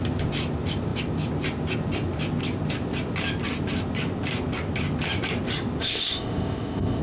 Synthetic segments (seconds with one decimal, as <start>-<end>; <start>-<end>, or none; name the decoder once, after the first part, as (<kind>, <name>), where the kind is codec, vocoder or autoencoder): 5.8-7.0 (codec, ZipCodec)